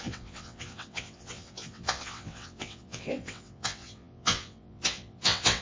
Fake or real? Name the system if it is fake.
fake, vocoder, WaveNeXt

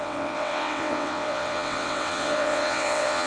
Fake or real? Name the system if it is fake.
fake, vocoder, WaveNeXt